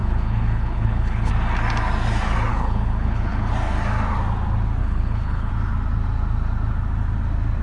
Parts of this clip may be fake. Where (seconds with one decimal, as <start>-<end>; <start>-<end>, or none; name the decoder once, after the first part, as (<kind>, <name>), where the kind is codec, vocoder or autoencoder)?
0.0-1.3 (codec, HILCodec); 2.5-3.5; 4.8-5.5